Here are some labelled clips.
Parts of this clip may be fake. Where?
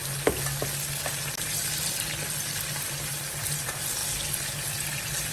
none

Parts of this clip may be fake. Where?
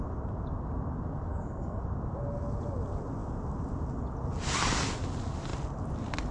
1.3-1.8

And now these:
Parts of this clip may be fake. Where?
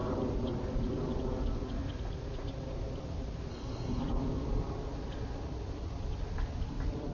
3.5-4.0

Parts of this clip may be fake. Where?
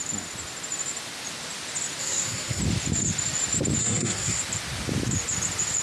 2.0-2.6; 3.8-4.4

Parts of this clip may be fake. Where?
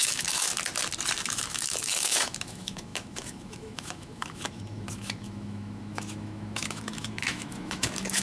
0.0-0.5; 1.2-8.2